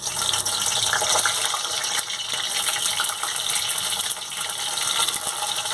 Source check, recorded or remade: recorded